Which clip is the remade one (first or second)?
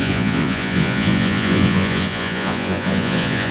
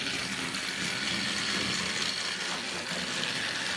first